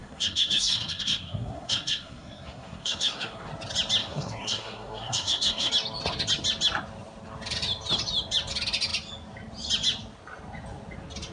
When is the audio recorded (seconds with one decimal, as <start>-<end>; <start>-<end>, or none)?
3.5-4.0; 5.7-11.3